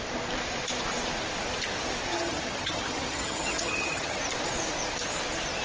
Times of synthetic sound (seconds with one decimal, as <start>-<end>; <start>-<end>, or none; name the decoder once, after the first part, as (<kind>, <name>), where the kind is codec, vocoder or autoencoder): 2.1-4.2 (vocoder, HiFi-GAN)